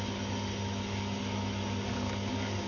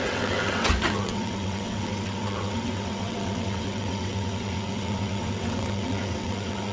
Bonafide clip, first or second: first